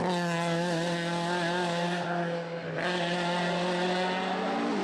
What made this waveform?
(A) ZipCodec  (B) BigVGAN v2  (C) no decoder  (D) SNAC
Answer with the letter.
C